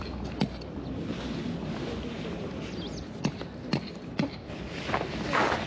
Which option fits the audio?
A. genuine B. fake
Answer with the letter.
A